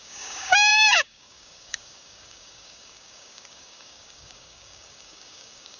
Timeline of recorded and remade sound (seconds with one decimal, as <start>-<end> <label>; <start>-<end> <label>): 0.0-5.8 remade